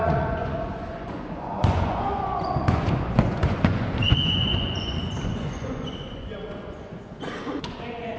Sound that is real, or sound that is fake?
fake